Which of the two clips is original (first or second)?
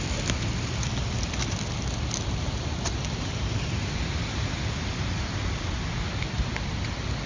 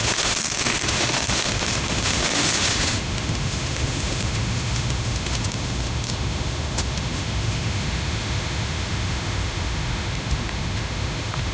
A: first